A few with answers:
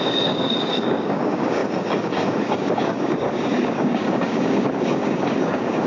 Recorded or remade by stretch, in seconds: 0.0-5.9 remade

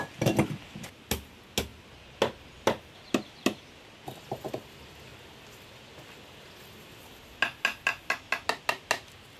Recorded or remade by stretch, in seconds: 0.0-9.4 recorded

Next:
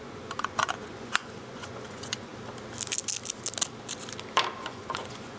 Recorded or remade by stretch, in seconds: 0.0-2.3 remade; 2.3-4.6 recorded; 4.6-5.4 remade

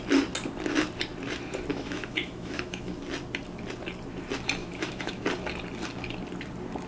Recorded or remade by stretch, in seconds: 0.0-1.7 recorded; 1.7-3.0 remade; 3.0-4.6 recorded; 4.6-5.2 remade; 5.2-6.9 recorded

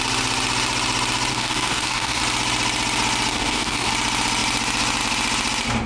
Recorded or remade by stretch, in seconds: 0.0-1.3 recorded; 1.3-2.2 remade; 2.2-3.3 recorded; 3.3-3.9 remade; 3.9-5.9 recorded